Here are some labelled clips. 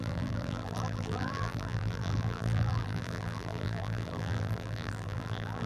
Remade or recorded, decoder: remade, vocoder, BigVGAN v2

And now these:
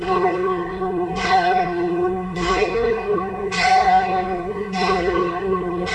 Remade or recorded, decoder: remade, codec, SNAC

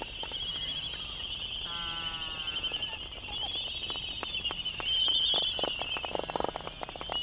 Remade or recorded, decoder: recorded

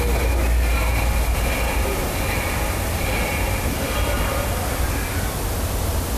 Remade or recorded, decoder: recorded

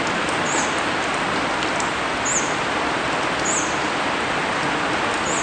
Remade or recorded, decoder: recorded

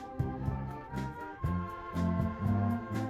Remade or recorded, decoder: remade, autoencoder, DAC-VAE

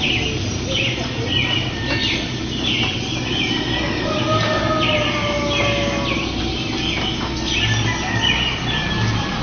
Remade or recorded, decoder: recorded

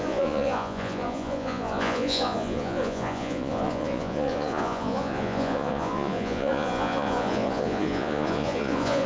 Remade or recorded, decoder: remade, vocoder, Vocos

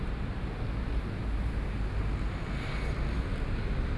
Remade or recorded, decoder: recorded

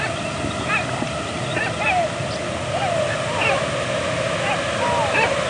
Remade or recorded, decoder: recorded